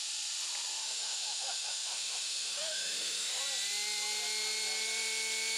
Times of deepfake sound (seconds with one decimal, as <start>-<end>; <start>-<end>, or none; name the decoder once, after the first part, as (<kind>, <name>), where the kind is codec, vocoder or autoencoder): 0.8-3.4 (autoencoder, DAC-VAE)